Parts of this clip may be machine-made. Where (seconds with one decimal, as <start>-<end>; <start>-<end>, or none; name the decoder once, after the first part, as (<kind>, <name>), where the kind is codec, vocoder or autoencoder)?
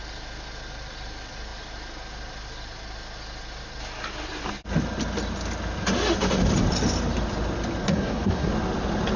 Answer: 7.8-8.5 (codec, SNAC)